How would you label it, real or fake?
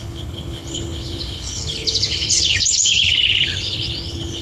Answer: fake